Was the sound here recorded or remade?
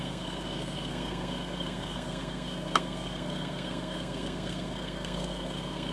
remade